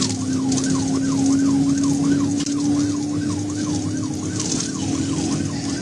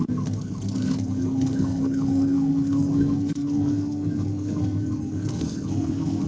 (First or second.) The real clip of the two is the first